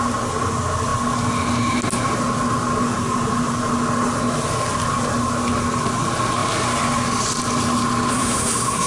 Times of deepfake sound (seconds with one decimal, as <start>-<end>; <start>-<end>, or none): 8.1-8.9

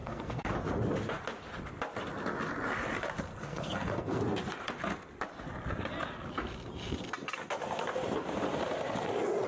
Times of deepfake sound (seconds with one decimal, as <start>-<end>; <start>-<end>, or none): 0.0-0.5; 3.3-4.2

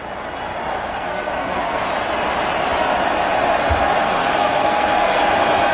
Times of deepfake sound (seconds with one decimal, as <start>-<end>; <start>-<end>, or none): 0.9-1.8; 4.0-5.3

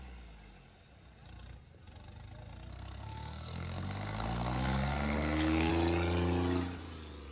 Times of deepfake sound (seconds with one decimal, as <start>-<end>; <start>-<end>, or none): 2.7-5.7

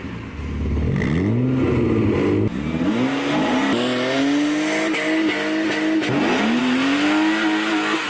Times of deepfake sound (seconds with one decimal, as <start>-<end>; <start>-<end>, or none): none

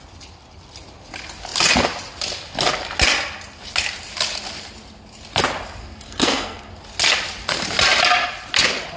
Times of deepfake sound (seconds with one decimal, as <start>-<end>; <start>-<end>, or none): 5.8-6.7

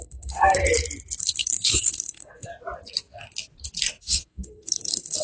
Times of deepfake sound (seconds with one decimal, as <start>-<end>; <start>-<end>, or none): 0.0-0.6; 1.2-2.5; 4.0-5.2